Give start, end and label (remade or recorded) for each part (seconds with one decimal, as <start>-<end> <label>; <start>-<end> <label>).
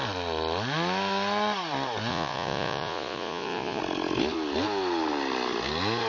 0.0-2.1 recorded; 2.1-3.8 remade; 3.8-6.1 recorded